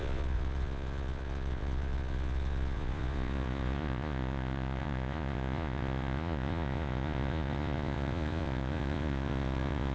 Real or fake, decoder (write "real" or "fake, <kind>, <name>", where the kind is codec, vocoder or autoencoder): fake, vocoder, Vocos